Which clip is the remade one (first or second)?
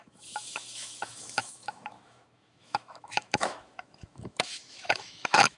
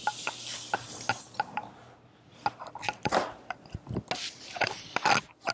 first